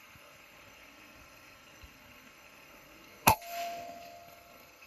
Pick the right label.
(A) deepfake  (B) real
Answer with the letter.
A